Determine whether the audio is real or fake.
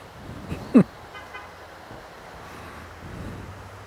real